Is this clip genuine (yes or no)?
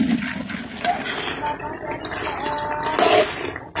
yes